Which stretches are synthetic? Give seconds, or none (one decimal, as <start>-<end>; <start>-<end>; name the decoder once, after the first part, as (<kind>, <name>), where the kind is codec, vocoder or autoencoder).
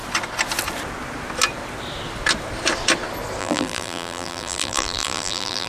3.4-5.7 (vocoder, BigVGAN v2)